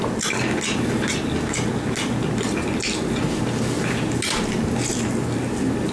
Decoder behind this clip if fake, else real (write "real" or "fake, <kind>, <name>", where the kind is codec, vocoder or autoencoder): real